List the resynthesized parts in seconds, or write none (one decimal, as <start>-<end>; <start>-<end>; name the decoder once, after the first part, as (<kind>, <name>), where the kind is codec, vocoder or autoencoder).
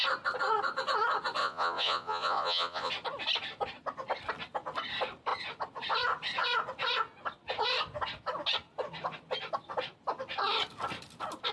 1.4-2.9 (vocoder, Vocos)